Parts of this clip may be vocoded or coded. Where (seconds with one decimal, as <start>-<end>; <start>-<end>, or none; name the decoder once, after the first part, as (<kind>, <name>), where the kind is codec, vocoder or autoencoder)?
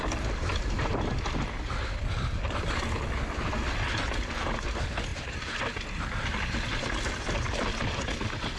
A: 5.1-6.3 (vocoder, BigVGAN v2)